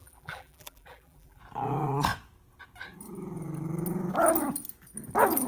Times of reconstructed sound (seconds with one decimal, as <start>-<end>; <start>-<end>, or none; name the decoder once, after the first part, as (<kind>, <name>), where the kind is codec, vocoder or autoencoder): 0.0-1.4 (vocoder, BigVGAN v2)